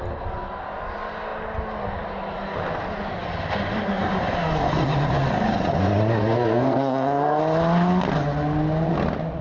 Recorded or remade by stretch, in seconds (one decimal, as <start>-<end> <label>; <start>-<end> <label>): 0.0-6.2 recorded; 6.2-7.4 remade; 7.4-9.4 recorded